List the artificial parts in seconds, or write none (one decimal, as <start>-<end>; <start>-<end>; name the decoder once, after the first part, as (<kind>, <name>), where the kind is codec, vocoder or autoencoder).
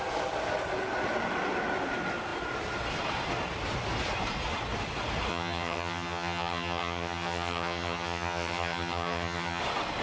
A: 5.3-9.6 (vocoder, HiFi-GAN)